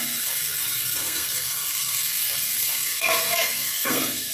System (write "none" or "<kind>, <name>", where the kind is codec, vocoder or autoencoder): codec, SNAC